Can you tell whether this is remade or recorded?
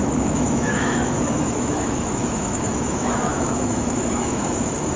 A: remade